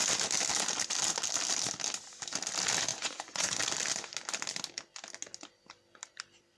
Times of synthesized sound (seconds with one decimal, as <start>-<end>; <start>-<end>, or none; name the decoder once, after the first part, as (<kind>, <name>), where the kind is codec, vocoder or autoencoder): 2.9-3.6 (vocoder, Vocos)